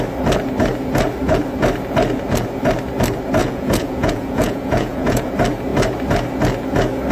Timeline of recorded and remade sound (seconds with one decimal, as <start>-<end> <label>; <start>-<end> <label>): 0.0-3.4 recorded; 3.4-5.3 remade; 5.3-7.1 recorded